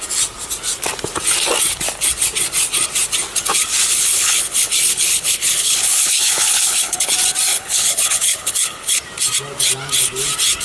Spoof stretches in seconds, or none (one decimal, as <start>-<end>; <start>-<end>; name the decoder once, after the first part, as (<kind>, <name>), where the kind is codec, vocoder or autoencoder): 3.9-7.1 (codec, HILCodec); 7.5-9.0